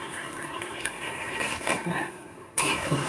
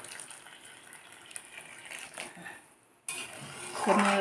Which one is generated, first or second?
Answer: first